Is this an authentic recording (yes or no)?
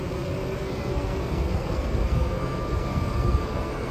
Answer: no